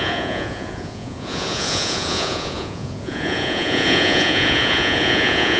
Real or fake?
fake